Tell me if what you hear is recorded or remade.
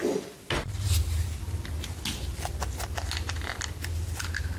recorded